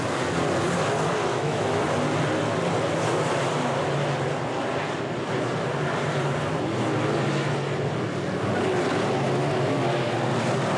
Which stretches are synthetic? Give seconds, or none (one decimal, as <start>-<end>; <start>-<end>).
1.3-1.8